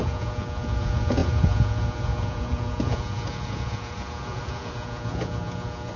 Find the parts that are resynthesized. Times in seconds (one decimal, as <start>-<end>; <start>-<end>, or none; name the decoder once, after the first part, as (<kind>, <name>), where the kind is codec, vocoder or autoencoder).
0.0-6.0 (vocoder, Vocos)